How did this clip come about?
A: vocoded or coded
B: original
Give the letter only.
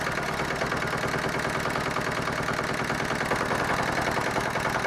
B